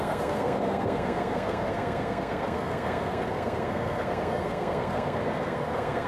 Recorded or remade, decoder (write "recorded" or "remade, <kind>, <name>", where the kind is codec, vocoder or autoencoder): remade, codec, SNAC